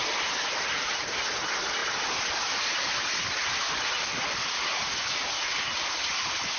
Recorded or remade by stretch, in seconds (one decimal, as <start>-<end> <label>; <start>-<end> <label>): 0.0-6.6 recorded